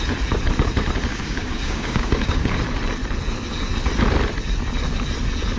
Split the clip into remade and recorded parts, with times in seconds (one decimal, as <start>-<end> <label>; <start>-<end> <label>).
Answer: 0.0-1.1 recorded; 1.1-2.6 remade; 2.6-5.6 recorded